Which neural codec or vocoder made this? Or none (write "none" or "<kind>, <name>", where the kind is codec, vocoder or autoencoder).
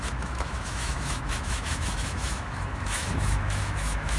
autoencoder, DAC-VAE